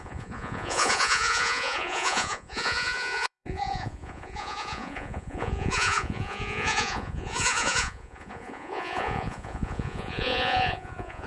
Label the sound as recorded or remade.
remade